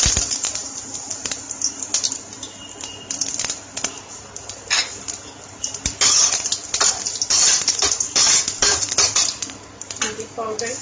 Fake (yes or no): no